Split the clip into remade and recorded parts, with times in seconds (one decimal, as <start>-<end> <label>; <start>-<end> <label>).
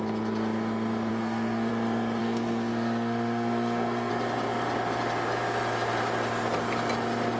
0.0-1.1 recorded; 1.1-1.7 remade; 1.7-2.2 recorded; 2.2-4.1 remade; 4.1-7.4 recorded